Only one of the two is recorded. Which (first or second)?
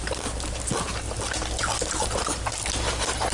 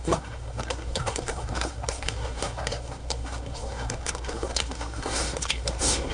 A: first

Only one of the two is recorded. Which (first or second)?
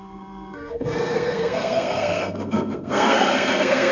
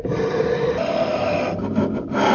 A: second